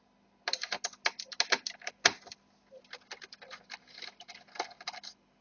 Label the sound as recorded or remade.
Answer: recorded